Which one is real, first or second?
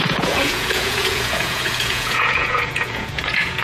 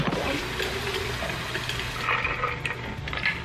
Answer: second